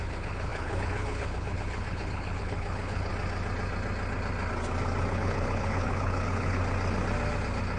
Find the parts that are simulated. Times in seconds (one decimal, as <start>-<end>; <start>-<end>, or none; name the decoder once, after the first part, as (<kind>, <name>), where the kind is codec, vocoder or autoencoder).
0.0-3.1 (codec, HILCodec); 5.1-6.6